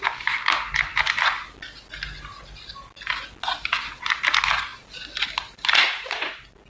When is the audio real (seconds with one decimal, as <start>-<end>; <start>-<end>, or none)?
0.0-6.7